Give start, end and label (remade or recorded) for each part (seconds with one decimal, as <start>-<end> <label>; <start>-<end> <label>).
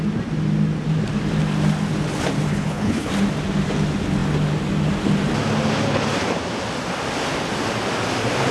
0.0-2.5 recorded; 2.5-3.1 remade; 3.1-8.5 recorded